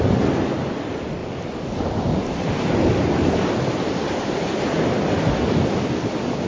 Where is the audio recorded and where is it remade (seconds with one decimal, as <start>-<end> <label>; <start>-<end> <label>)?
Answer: 0.0-6.5 recorded